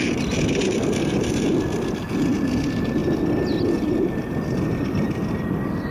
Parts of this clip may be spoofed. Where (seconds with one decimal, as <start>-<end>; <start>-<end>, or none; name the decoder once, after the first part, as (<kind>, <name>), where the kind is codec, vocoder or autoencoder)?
none

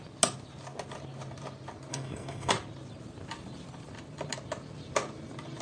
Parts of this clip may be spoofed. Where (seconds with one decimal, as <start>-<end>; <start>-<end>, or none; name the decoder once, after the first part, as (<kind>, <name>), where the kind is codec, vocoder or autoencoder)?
1.9-2.5 (codec, SNAC)

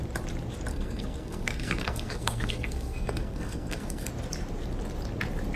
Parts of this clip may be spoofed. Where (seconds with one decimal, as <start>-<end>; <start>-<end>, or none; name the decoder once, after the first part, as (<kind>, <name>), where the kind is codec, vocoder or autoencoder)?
0.7-4.1 (codec, SNAC)

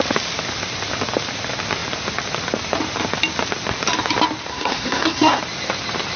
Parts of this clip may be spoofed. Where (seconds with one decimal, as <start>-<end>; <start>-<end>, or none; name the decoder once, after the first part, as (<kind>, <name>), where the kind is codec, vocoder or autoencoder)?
4.5-5.4 (codec, SNAC)

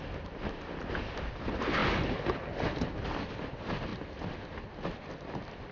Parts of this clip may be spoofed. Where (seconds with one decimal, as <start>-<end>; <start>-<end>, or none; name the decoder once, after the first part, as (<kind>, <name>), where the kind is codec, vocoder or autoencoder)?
none

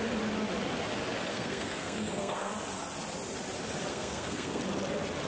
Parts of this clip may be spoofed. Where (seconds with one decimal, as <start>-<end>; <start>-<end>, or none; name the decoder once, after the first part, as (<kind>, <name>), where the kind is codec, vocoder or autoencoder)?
1.3-2.5 (codec, SNAC); 3.9-4.6